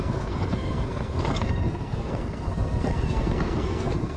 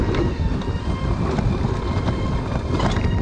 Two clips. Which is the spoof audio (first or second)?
first